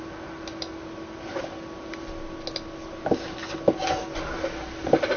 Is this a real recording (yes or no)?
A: yes